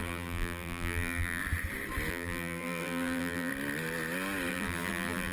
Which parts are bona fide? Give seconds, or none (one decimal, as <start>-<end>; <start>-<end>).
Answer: 1.4-2.1; 3.5-4.5